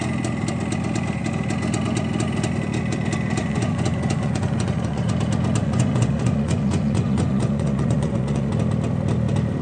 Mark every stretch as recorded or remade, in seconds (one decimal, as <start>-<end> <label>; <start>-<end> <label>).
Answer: 0.0-3.4 recorded; 3.4-5.1 remade; 5.1-5.6 recorded; 5.6-8.5 remade; 8.5-9.6 recorded